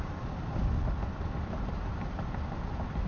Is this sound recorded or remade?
recorded